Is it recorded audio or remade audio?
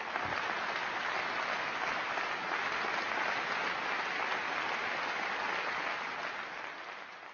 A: recorded